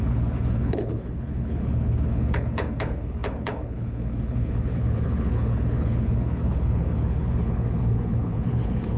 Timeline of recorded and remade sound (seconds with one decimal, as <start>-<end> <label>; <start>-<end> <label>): 0.0-9.0 remade